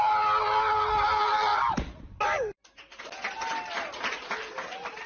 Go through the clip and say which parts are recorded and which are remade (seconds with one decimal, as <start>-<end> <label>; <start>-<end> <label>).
0.0-5.1 recorded

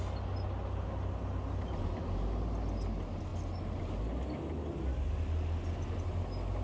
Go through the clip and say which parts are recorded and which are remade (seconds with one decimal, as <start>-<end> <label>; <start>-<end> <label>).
0.0-6.6 recorded

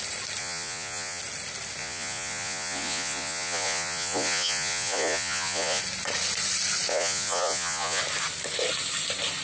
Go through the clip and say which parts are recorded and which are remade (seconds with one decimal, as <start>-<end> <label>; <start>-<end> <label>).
0.0-0.4 recorded; 0.4-1.2 remade; 1.2-1.8 recorded; 1.8-5.8 remade; 5.8-6.9 recorded; 6.9-8.0 remade; 8.0-9.4 recorded

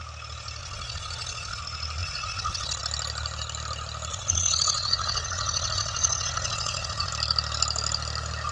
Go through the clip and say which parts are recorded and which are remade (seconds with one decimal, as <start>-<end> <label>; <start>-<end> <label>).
0.0-0.6 recorded; 0.6-1.6 remade; 1.6-2.0 recorded; 2.0-2.8 remade; 2.8-4.1 recorded; 4.1-7.1 remade; 7.1-8.5 recorded